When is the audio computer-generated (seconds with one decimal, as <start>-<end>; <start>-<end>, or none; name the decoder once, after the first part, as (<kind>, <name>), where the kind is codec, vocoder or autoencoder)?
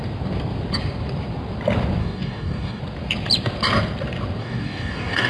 2.0-2.8 (codec, DAC); 4.4-5.3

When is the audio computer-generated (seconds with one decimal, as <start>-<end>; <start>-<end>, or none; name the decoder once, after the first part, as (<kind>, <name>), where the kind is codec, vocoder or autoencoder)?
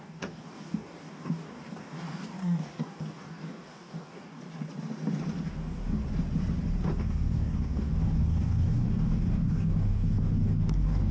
0.0-4.4 (codec, DAC); 5.5-6.0; 7.0-11.1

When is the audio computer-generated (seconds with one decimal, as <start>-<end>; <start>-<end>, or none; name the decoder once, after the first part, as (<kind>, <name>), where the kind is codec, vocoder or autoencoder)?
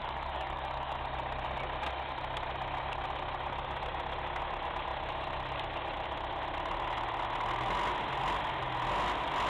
0.0-1.0 (codec, DAC)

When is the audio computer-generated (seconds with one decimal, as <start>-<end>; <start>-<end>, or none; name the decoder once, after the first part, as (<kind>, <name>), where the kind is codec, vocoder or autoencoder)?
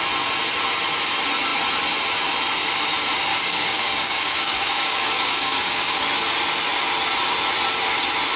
3.3-6.0 (codec, DAC)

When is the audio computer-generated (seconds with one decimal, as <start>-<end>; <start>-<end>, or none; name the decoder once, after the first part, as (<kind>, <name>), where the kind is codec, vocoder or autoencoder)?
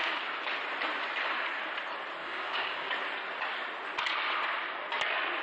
2.2-2.9 (codec, DAC)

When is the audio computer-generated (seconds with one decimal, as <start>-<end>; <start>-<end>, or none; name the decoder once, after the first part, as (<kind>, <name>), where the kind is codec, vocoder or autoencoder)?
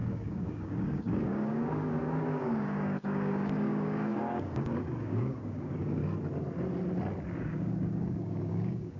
0.0-6.0 (codec, DAC); 7.4-9.0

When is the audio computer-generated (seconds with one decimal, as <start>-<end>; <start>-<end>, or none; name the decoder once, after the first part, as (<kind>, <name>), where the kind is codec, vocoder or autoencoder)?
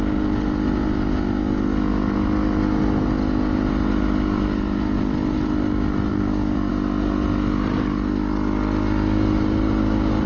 6.1-6.7 (codec, DAC)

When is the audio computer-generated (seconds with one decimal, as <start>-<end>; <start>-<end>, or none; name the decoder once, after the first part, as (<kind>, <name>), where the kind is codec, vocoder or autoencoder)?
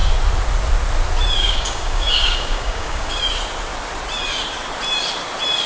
1.4-3.2 (codec, DAC)